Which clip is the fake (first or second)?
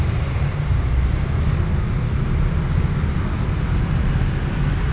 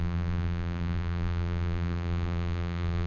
second